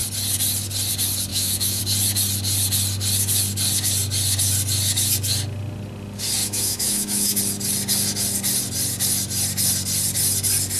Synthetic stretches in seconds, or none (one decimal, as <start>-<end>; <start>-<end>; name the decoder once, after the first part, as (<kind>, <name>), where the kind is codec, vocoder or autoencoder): 1.3-1.8 (autoencoder, DAC-VAE); 6.4-7.4